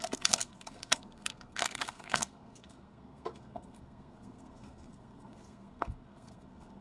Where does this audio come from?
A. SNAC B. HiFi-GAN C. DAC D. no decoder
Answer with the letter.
A